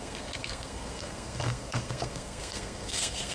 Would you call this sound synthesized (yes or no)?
yes